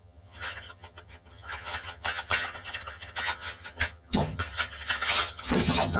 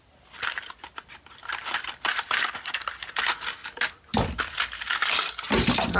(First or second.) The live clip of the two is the second